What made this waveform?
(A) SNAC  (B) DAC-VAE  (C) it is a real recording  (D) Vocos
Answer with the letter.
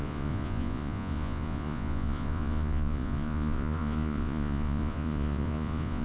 D